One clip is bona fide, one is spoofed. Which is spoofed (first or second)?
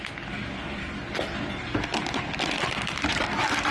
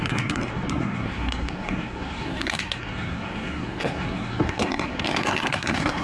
second